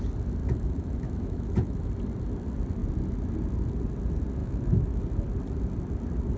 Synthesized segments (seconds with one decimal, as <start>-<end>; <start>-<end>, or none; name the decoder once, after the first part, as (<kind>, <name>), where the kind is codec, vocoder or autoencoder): 0.4-1.9 (autoencoder, DAC-VAE); 4.4-5.0